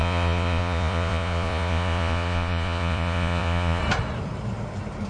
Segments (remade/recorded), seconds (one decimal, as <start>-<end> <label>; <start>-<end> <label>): 0.0-3.8 remade; 3.8-5.1 recorded